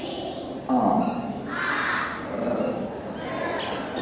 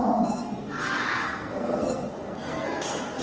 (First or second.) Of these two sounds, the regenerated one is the second